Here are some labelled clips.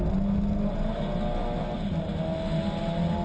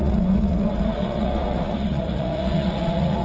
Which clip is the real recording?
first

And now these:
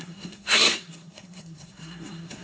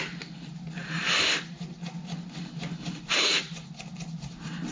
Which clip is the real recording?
second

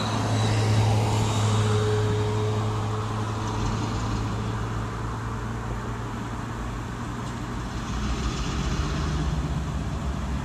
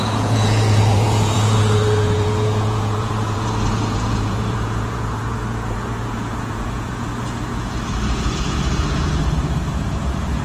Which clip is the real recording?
first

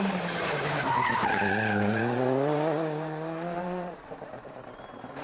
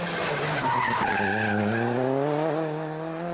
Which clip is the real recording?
second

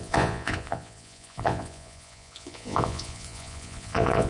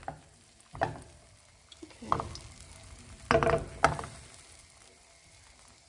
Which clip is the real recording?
second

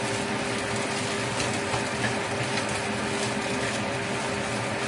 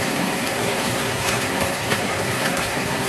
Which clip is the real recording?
first